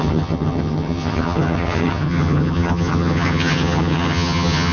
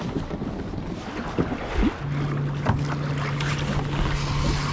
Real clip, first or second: second